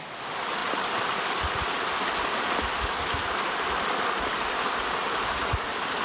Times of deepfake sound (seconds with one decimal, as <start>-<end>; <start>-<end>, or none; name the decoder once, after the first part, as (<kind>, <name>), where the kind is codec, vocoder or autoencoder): 0.6-1.5 (vocoder, BigVGAN v2)